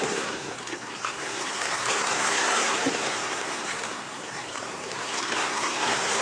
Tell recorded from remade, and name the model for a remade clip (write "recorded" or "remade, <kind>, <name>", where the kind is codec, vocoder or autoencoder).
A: remade, codec, SNAC